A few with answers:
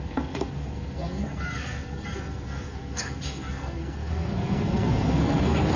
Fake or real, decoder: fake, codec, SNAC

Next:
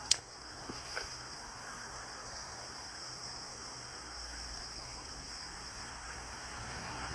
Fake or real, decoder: fake, codec, SNAC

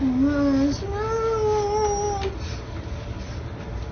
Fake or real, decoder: real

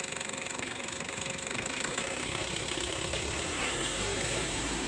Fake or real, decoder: fake, codec, SNAC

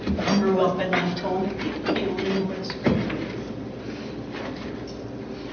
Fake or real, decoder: real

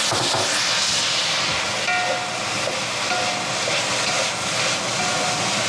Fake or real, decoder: real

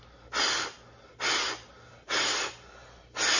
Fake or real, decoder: real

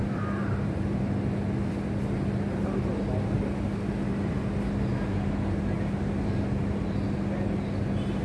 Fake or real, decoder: real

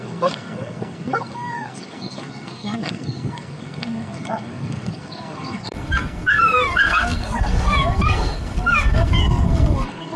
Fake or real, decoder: fake, codec, SNAC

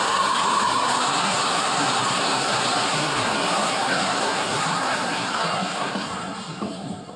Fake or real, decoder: fake, codec, SNAC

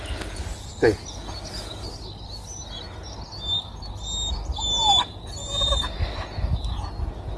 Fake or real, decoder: real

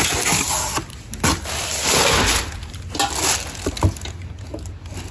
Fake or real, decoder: real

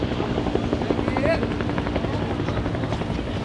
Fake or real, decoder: real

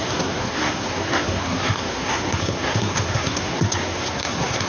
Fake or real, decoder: fake, codec, SNAC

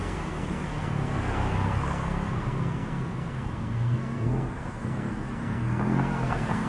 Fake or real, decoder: fake, codec, SNAC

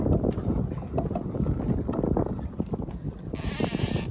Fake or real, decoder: real